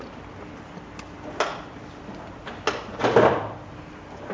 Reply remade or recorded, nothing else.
recorded